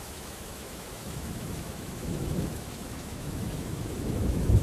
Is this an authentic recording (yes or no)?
no